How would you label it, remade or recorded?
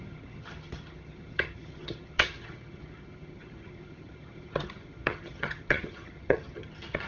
remade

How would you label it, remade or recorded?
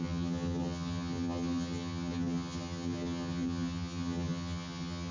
remade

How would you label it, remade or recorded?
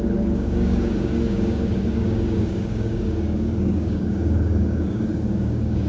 remade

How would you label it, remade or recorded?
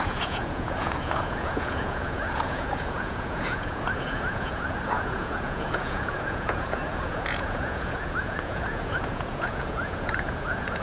remade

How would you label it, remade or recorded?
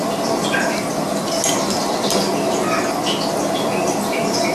recorded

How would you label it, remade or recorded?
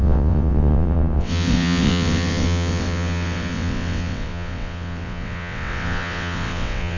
remade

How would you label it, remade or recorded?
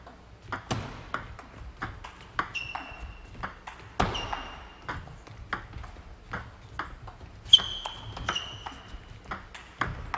recorded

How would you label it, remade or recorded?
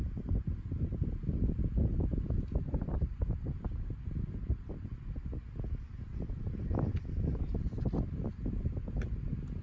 recorded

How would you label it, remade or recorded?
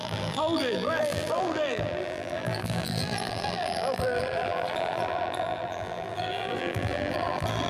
remade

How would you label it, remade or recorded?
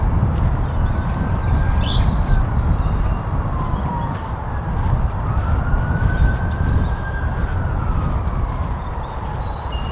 recorded